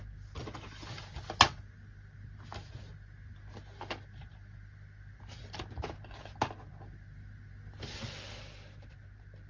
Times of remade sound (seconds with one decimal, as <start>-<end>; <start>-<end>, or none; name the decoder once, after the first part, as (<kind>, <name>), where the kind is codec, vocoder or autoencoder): none